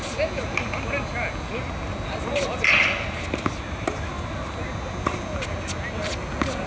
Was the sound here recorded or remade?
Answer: recorded